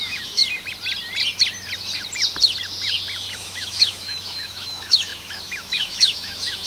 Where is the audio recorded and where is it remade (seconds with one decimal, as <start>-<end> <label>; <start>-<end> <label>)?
0.0-0.4 remade; 0.4-3.3 recorded; 3.3-6.7 remade